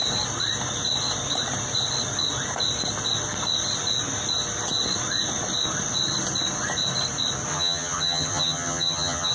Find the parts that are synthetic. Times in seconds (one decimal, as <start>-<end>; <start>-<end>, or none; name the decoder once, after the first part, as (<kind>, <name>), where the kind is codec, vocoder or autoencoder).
7.5-9.3 (vocoder, HiFi-GAN)